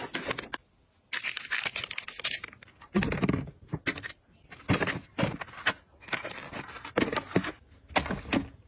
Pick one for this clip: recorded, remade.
recorded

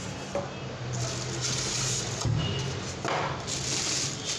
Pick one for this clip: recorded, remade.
recorded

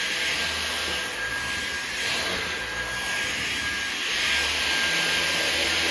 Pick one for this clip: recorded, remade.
recorded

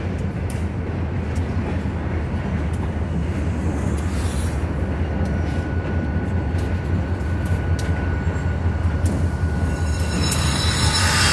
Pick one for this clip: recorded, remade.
recorded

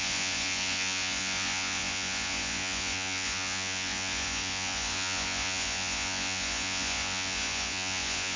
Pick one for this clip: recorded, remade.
remade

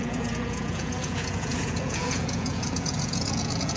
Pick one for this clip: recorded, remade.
remade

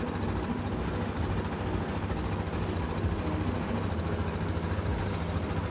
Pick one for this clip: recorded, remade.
recorded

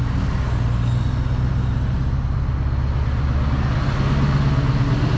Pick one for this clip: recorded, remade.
recorded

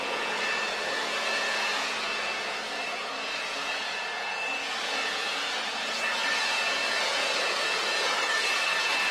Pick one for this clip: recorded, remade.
remade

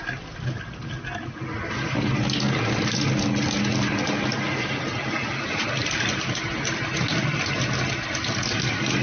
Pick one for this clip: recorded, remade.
recorded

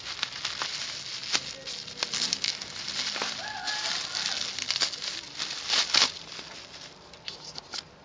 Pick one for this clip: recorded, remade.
recorded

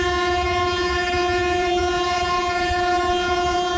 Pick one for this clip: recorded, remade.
remade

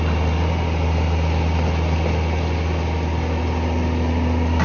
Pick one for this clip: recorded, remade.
recorded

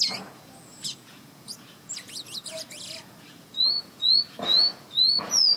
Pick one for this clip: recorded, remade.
remade